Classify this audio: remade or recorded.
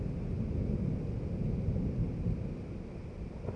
recorded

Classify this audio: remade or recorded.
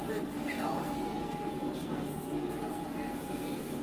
remade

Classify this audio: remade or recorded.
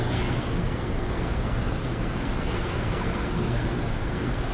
remade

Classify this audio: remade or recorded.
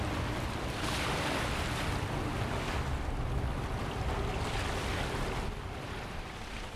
recorded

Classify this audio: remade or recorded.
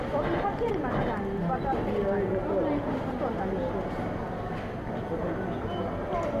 recorded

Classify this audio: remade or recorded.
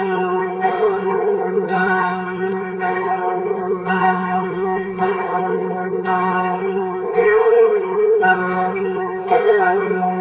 remade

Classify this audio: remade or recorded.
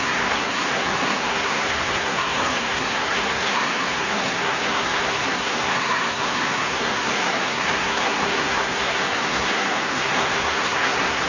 remade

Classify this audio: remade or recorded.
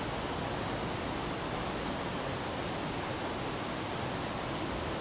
recorded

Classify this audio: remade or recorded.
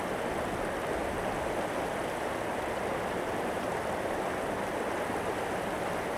recorded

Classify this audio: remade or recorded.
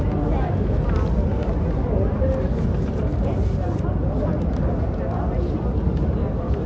recorded